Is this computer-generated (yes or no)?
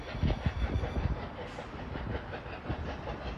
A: no